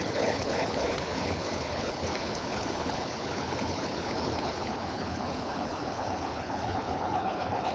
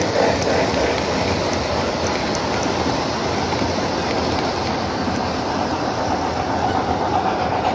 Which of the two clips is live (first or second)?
second